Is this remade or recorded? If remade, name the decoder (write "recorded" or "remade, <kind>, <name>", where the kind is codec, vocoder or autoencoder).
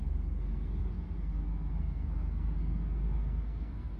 remade, codec, SNAC